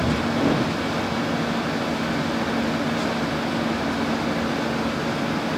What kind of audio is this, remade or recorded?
recorded